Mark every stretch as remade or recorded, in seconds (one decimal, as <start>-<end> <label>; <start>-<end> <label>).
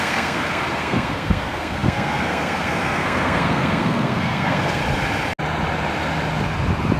0.0-4.8 remade; 4.8-7.0 recorded